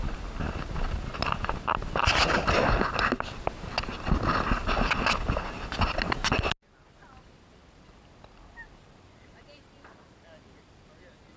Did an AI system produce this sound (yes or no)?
no